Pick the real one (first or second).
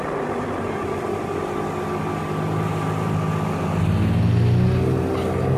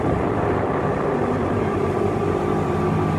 first